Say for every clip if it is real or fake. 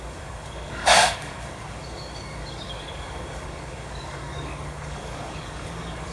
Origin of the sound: fake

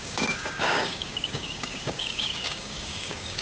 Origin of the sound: fake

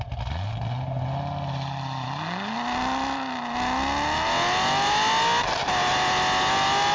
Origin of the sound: real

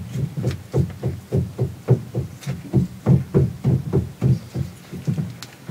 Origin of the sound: real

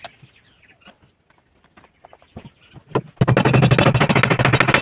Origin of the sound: real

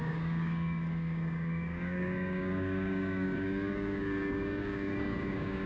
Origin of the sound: fake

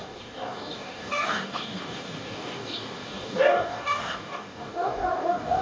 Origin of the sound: fake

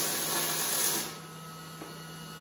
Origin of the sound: real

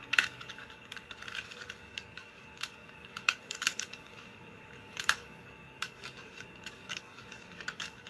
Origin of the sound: fake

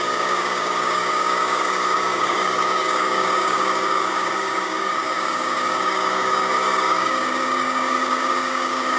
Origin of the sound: fake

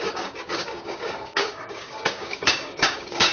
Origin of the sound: fake